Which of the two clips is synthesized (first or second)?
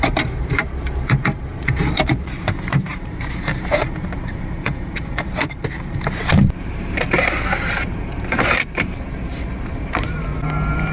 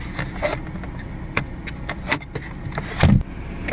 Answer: first